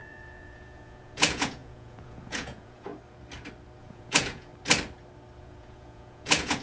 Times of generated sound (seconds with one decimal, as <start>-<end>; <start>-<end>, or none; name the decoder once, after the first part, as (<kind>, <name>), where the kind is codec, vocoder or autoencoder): 0.0-2.9 (vocoder, Vocos); 3.8-4.5; 5.4-6.6